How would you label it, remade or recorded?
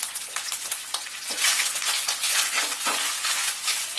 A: remade